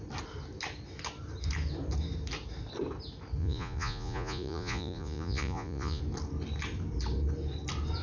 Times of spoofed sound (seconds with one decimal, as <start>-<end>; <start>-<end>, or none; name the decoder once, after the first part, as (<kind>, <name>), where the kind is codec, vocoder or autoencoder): 3.4-6.0 (vocoder, Vocos)